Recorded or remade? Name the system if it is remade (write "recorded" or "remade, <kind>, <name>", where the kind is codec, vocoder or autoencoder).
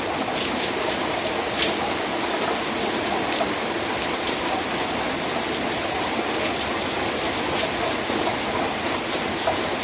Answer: recorded